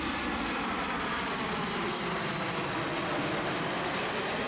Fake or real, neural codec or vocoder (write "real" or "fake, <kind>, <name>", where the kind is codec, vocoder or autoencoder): real